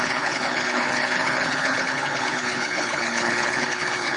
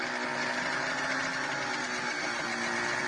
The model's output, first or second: first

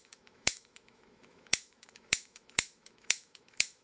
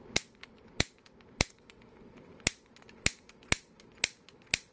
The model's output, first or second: first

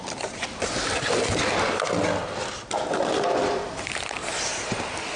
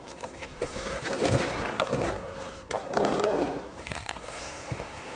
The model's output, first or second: second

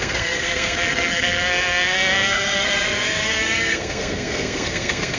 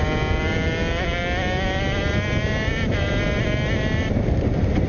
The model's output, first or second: first